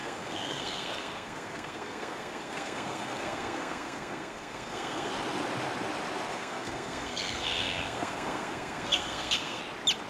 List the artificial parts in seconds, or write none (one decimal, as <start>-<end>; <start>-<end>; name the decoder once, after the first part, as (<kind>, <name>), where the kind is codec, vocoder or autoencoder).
0.0-5.1 (codec, SNAC); 6.3-9.6